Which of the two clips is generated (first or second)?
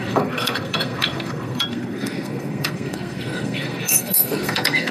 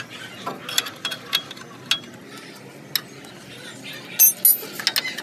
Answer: first